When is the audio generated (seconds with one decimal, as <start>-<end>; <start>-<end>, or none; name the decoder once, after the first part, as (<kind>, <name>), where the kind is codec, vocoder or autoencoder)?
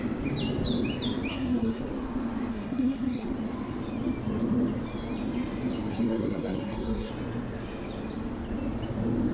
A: 1.3-1.8 (codec, SNAC); 2.5-3.3; 5.9-7.1